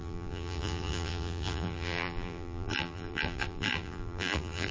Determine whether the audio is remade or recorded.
remade